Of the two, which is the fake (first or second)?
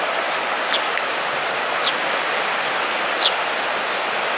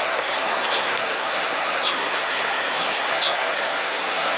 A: second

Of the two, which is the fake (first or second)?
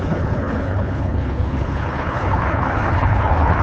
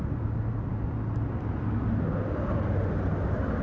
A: first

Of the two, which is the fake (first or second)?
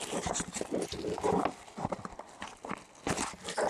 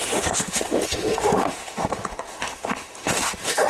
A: second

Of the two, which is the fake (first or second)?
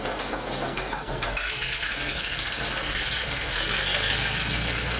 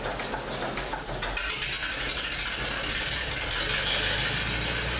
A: first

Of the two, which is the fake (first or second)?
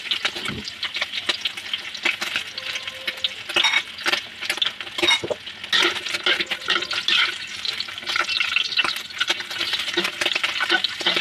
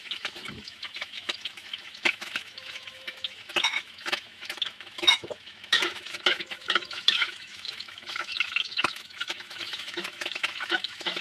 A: second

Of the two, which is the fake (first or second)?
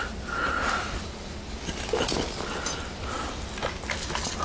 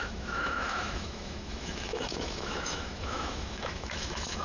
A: second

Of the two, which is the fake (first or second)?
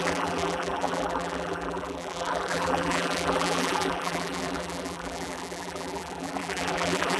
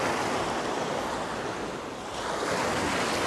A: first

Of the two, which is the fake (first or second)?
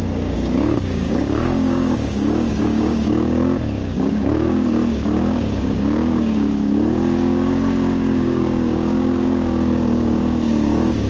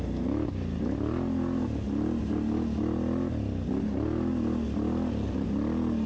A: first